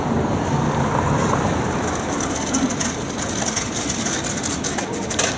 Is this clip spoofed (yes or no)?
no